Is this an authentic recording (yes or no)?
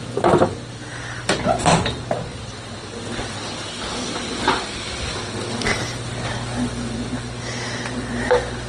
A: yes